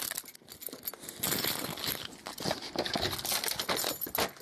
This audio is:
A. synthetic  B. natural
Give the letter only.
B